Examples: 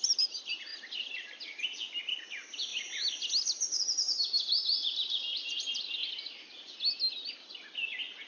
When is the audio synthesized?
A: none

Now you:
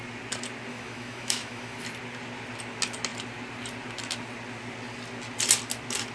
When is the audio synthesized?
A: 0.7-1.8 (autoencoder, DAC-VAE)

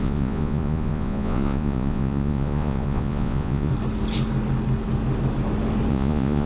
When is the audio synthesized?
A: 0.0-3.7 (vocoder, Vocos); 5.9-6.5